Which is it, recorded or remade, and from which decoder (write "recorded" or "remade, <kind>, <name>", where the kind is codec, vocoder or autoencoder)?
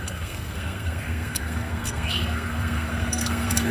remade, codec, SNAC